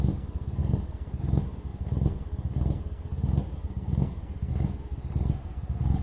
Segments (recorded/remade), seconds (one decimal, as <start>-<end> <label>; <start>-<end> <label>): 0.0-6.0 remade